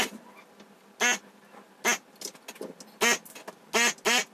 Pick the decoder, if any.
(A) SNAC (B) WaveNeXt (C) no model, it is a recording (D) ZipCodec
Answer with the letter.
C